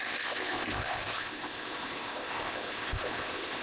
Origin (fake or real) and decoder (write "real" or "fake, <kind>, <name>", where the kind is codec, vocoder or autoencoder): fake, codec, ZipCodec